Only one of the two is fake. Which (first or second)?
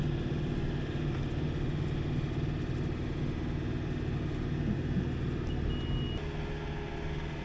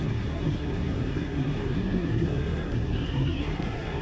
second